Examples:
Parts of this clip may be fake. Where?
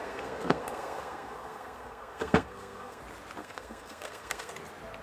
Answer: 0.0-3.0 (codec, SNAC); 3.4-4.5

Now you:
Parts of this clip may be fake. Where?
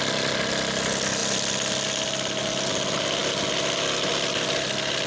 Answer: none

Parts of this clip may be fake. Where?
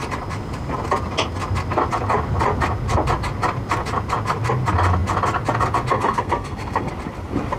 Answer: 5.9-6.9 (codec, SNAC)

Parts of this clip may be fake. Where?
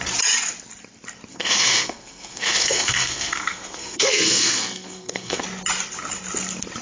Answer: 1.3-5.4 (codec, SNAC)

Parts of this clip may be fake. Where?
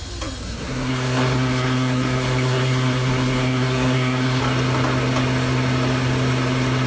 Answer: 0.4-4.4 (codec, SNAC)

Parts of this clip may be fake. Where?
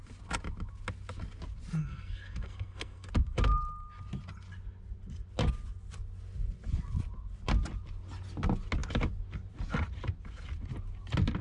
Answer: 1.8-3.1 (codec, SNAC)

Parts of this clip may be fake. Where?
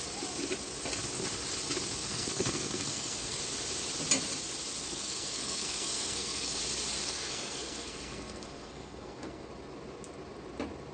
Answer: 2.0-3.4 (codec, SNAC); 4.8-6.6; 7.0-9.5